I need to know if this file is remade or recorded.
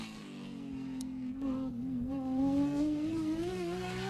remade